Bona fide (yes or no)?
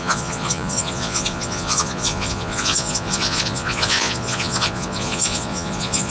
no